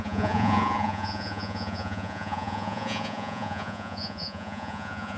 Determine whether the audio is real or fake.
fake